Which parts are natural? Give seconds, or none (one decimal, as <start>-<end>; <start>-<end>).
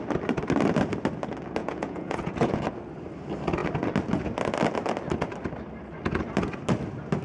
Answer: 0.0-1.6; 2.7-7.2